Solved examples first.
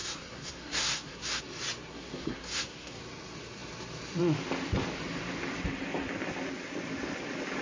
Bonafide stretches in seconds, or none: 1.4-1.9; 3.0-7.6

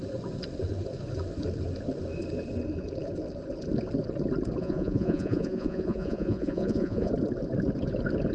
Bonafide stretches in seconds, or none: 0.0-4.6; 7.1-8.3

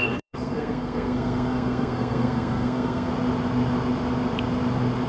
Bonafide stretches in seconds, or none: 3.1-5.1

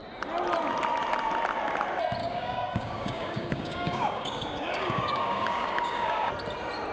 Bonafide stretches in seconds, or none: 0.0-2.2; 6.3-6.9

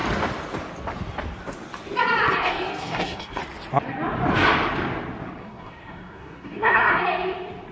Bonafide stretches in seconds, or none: 0.0-2.4; 3.4-5.4; 7.0-7.7

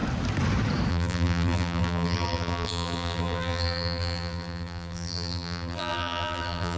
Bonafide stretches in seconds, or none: 0.0-0.9